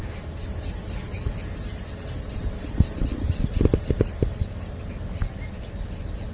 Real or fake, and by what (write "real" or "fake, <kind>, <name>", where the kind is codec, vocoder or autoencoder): real